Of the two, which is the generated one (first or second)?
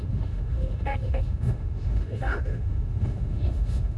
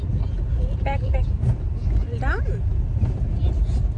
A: first